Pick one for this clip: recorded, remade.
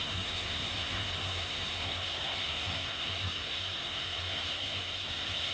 remade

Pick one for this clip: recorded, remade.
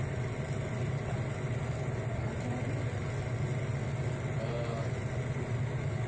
recorded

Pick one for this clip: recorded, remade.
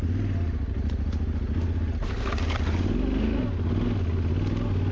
recorded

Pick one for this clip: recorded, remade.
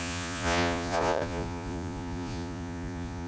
remade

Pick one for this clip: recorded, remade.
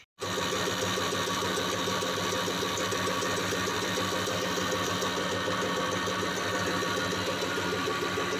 recorded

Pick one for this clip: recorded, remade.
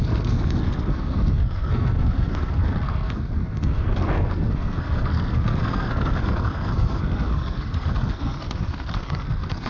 remade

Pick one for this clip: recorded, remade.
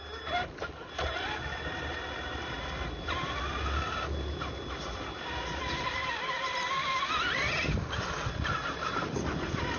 recorded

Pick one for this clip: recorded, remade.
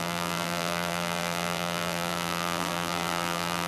remade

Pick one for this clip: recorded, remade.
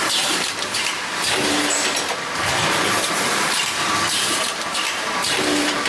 remade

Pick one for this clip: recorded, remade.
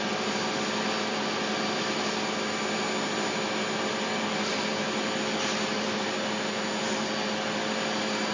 recorded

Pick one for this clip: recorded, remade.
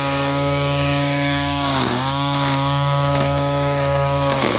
remade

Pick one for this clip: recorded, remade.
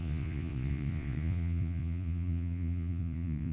remade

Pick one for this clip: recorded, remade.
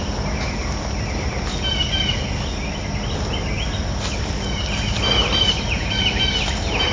recorded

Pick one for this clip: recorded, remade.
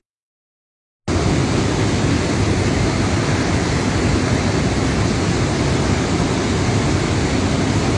recorded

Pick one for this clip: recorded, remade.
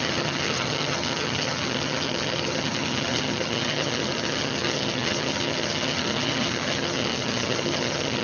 remade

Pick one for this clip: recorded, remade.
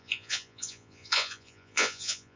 remade